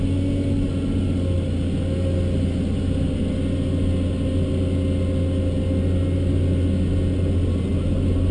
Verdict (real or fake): real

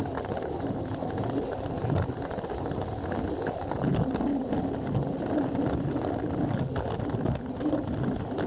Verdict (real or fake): real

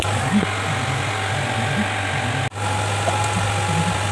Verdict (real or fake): real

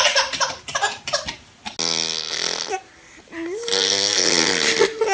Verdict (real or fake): real